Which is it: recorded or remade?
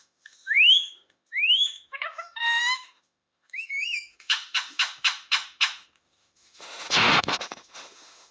remade